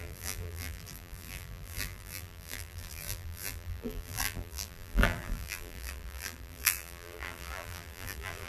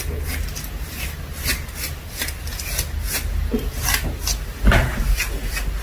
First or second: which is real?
second